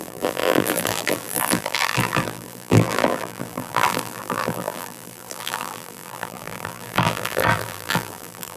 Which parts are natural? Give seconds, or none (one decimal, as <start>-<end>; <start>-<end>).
none